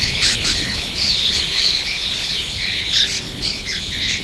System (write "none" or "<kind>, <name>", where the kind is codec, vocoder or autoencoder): codec, HILCodec